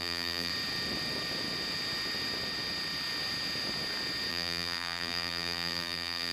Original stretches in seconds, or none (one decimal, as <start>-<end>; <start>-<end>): 0.5-4.3